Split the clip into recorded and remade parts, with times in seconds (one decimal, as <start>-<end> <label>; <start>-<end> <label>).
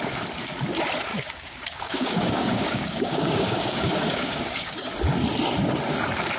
0.0-1.1 recorded; 1.1-4.9 remade; 4.9-6.4 recorded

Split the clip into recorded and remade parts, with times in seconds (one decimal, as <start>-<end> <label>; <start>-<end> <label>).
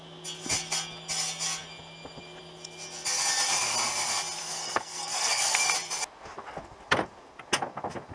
0.0-4.4 recorded; 4.4-5.7 remade; 5.7-8.1 recorded